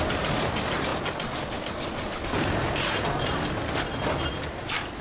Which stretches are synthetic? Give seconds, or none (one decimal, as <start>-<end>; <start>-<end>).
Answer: none